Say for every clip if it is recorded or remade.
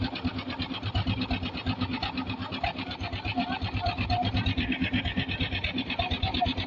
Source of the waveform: recorded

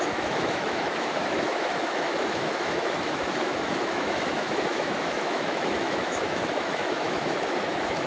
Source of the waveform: remade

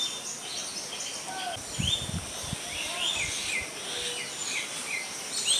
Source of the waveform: recorded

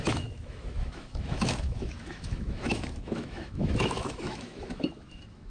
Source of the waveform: remade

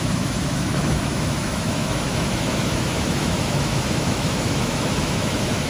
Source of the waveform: remade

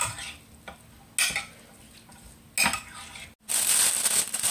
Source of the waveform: recorded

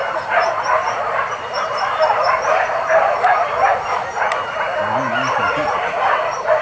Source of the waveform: recorded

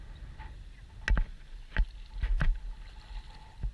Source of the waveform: recorded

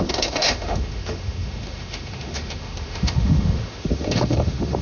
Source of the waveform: remade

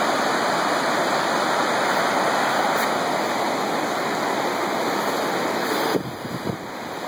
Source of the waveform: recorded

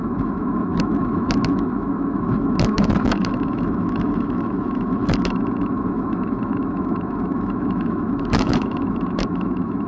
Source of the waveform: remade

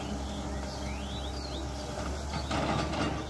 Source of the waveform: recorded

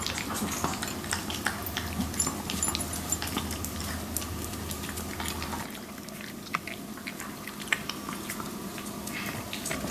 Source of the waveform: recorded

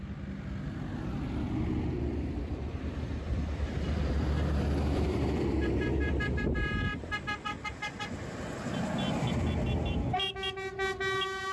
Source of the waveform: recorded